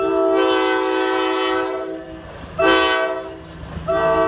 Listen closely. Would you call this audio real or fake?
real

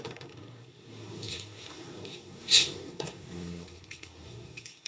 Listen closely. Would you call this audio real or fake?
fake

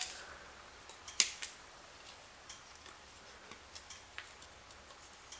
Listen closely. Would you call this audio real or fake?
real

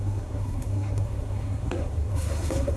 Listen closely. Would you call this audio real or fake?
fake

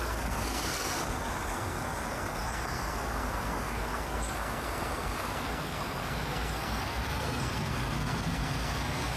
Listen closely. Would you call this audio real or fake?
fake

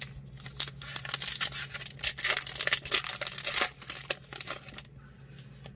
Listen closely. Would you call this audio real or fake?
real